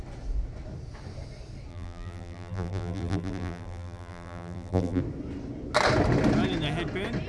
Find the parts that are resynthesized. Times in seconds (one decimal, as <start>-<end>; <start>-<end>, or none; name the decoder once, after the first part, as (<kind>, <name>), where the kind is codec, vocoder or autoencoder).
1.7-5.0 (vocoder, BigVGAN v2)